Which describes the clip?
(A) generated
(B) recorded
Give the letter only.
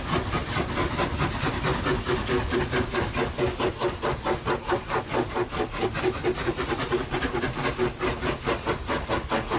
B